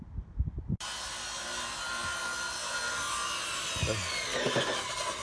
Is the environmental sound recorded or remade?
recorded